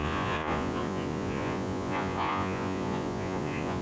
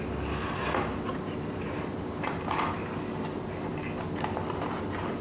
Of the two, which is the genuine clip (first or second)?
second